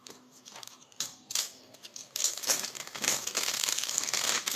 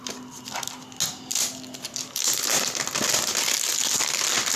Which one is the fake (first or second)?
first